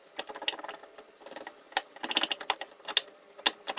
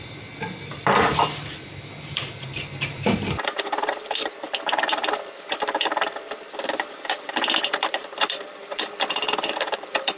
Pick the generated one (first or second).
second